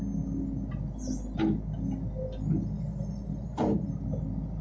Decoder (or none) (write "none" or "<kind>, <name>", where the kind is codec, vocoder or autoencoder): none